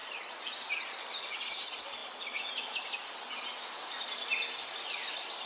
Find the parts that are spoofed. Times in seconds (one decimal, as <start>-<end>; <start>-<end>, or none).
none